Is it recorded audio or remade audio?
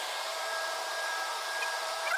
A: remade